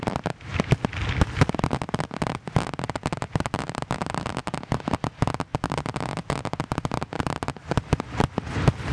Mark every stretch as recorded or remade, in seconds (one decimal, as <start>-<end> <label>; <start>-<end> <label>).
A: 0.0-8.9 recorded